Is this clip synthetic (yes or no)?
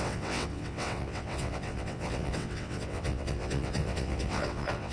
yes